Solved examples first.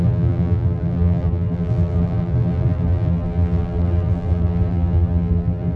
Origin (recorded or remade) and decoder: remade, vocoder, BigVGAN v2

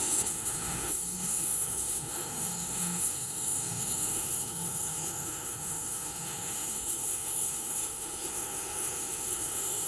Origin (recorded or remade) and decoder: remade, autoencoder, DAC-VAE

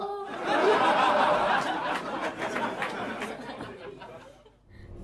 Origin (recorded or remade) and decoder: recorded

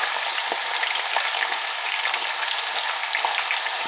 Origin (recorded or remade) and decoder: recorded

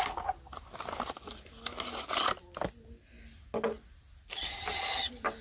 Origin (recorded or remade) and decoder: recorded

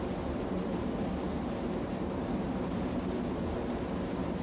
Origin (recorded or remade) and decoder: remade, vocoder, BigVGAN v2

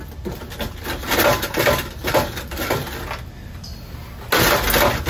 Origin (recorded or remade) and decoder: recorded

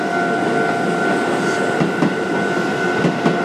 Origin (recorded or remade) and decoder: recorded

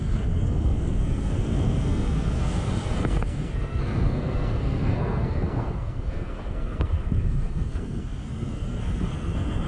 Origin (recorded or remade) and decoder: remade, codec, SNAC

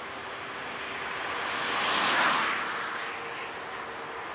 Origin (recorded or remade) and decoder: recorded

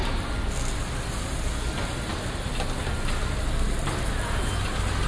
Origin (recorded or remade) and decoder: recorded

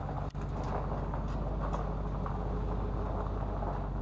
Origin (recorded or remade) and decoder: recorded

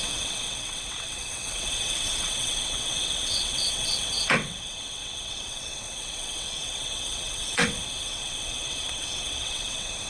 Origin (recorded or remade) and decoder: remade, vocoder, WaveNeXt